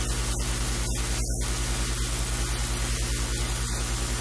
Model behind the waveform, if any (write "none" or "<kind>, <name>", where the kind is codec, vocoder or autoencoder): none